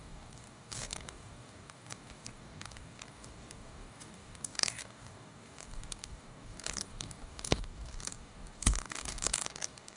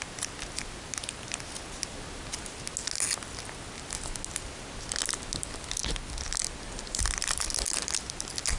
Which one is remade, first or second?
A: first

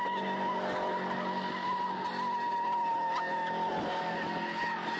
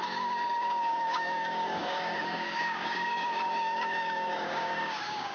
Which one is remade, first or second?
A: second